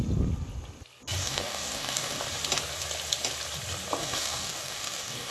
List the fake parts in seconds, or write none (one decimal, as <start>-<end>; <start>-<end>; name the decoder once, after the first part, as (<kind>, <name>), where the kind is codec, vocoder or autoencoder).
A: 1.2-2.2 (codec, DAC); 4.0-5.3